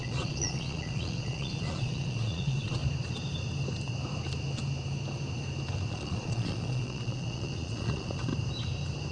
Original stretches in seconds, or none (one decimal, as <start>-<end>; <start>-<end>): 2.8-5.9; 8.3-9.1